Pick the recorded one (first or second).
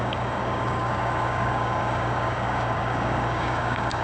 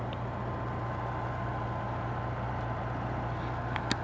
second